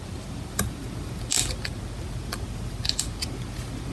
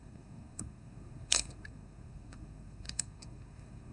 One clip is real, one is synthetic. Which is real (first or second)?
first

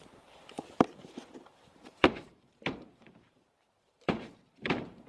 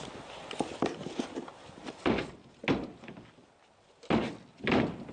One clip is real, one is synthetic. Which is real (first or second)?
second